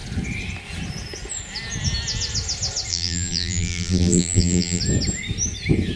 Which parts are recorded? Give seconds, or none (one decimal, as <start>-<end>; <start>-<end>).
0.0-2.9; 4.8-6.0